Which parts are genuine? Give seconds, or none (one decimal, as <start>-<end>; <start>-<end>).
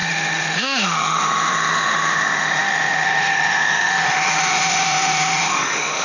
none